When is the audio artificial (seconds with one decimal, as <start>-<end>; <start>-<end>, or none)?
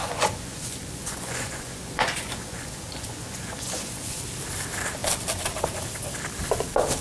0.0-4.2